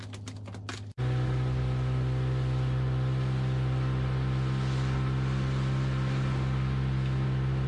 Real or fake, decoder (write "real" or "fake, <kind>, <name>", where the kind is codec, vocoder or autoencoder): real